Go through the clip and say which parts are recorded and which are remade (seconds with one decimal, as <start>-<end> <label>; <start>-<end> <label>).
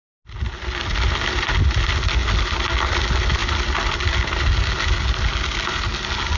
0.0-6.4 recorded